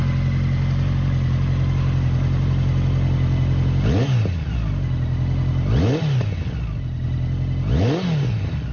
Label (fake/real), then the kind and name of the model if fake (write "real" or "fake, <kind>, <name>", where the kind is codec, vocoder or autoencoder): real